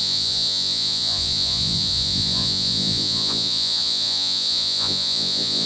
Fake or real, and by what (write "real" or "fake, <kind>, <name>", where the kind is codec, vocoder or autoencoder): fake, vocoder, Vocos